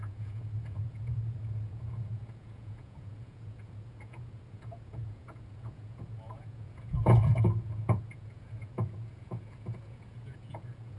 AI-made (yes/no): yes